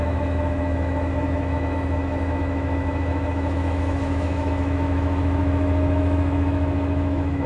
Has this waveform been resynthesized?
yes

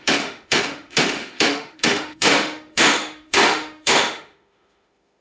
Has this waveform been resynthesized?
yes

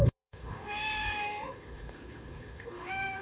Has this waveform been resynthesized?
yes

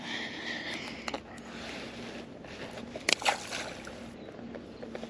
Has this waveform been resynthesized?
no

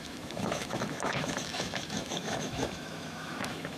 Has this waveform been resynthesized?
yes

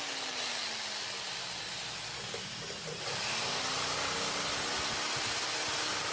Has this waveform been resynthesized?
no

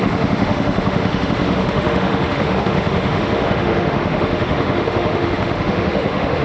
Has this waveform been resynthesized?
yes